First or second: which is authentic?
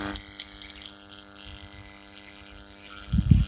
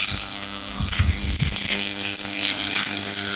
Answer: first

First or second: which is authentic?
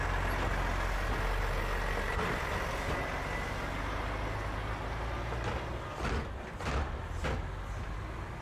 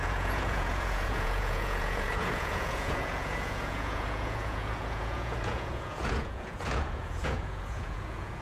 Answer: first